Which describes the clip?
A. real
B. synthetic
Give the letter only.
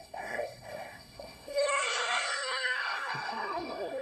B